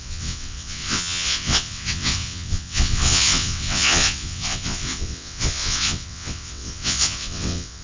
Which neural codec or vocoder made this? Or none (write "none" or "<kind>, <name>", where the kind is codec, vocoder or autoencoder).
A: vocoder, WaveNeXt